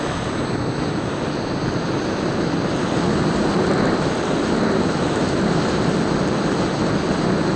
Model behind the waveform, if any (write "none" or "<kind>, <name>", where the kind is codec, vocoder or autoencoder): none